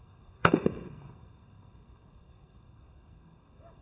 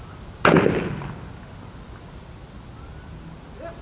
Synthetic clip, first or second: first